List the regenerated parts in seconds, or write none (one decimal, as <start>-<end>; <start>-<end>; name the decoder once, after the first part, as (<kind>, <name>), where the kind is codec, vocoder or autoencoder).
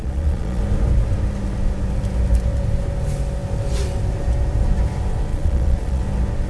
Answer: 0.0-0.6 (vocoder, Vocos); 5.3-6.0